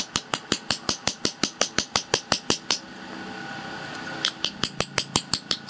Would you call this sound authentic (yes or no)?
yes